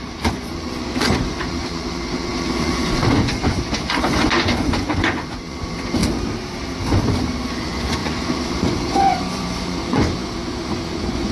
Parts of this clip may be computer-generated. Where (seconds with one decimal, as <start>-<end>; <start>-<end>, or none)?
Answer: 0.0-6.0; 7.5-11.3